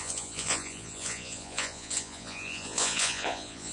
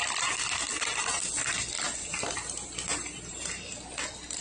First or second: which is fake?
first